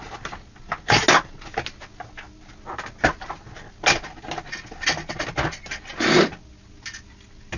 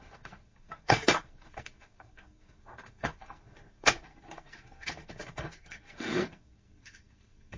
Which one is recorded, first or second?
first